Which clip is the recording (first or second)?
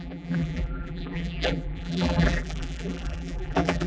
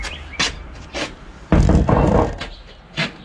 second